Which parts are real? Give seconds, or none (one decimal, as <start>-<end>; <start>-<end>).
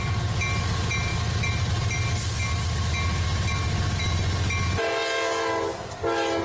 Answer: 0.0-6.4